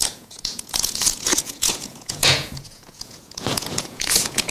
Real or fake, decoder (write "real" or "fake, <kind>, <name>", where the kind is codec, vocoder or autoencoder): fake, vocoder, Vocos